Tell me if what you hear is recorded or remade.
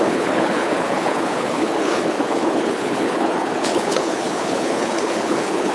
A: remade